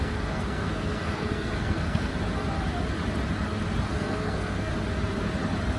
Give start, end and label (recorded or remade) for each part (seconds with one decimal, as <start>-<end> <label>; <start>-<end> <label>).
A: 0.0-2.1 remade; 2.1-3.9 recorded; 3.9-4.7 remade; 4.7-5.8 recorded